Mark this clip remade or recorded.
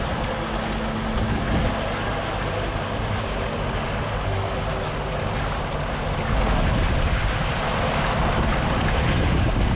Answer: recorded